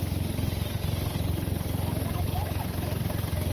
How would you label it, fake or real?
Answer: real